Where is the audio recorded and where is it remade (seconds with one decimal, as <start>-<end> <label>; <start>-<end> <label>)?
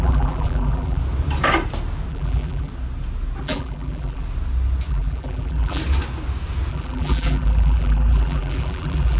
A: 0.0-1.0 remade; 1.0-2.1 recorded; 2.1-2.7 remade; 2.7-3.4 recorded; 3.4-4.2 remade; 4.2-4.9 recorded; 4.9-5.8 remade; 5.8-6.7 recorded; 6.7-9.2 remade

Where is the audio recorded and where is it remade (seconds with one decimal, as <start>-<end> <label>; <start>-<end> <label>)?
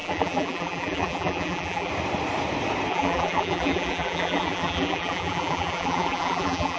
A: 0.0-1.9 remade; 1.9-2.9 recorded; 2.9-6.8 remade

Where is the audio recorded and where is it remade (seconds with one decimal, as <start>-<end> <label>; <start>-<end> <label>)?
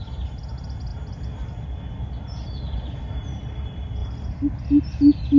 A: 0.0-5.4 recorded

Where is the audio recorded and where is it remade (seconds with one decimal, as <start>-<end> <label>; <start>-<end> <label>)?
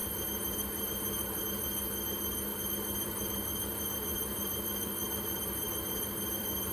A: 0.0-1.4 remade; 1.4-2.5 recorded; 2.5-6.7 remade